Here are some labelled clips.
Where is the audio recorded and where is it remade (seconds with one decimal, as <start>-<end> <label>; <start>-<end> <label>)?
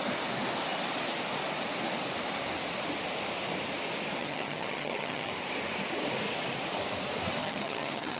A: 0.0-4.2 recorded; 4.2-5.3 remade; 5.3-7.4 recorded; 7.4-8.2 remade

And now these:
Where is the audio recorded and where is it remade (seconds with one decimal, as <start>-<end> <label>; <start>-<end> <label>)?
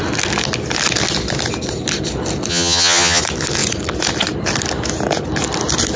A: 0.0-2.5 recorded; 2.5-3.2 remade; 3.2-6.0 recorded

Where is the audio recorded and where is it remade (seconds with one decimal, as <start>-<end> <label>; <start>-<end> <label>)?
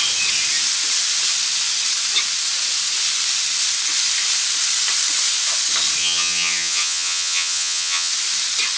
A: 0.0-6.0 recorded; 6.0-8.1 remade; 8.1-8.8 recorded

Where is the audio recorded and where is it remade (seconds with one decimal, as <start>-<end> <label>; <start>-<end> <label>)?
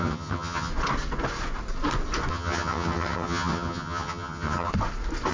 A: 0.0-0.7 remade; 0.7-2.3 recorded; 2.3-4.7 remade; 4.7-5.3 recorded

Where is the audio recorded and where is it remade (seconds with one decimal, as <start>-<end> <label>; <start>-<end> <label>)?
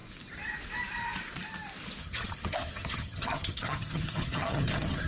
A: 0.0-2.0 recorded; 2.0-5.1 remade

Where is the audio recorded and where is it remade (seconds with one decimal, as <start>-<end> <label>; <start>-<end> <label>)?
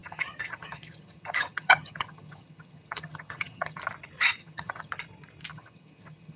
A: 0.0-3.8 remade; 3.8-4.4 recorded; 4.4-4.9 remade; 4.9-5.5 recorded; 5.5-6.4 remade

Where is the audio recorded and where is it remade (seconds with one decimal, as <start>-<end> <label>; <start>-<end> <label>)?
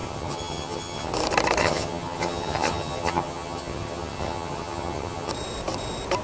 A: 0.0-1.1 remade; 1.1-1.6 recorded; 1.6-5.3 remade; 5.3-6.2 recorded